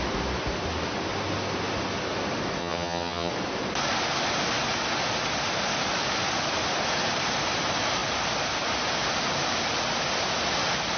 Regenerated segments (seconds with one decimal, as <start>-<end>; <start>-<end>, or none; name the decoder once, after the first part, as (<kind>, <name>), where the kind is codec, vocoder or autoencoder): 2.6-3.3 (vocoder, HiFi-GAN)